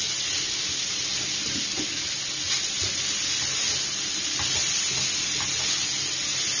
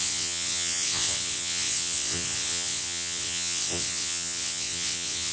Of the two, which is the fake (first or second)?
second